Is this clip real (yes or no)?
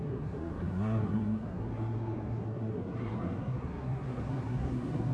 no